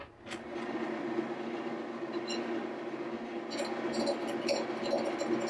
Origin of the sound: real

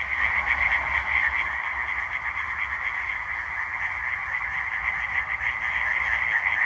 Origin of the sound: real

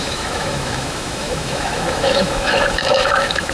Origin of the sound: fake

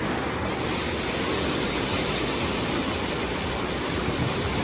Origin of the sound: real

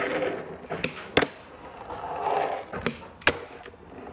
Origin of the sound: real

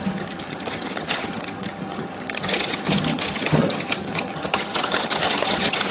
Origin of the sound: fake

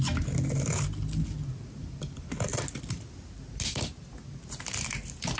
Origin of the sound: real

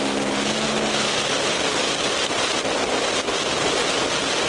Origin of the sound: real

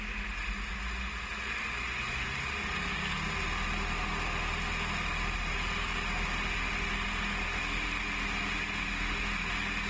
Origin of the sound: real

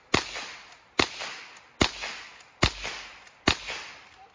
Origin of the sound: real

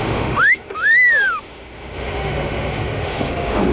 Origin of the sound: fake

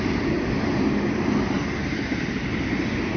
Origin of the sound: real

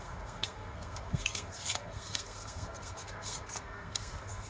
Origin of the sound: fake